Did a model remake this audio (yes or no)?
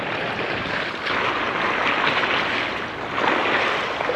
no